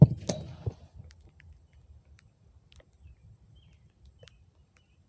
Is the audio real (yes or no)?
yes